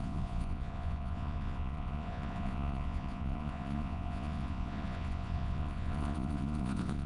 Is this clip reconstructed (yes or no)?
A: yes